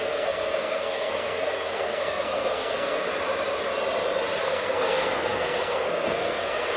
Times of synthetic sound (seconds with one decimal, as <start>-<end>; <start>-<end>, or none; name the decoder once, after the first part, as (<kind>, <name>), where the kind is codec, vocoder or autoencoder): 0.0-3.1 (codec, SNAC); 4.4-6.8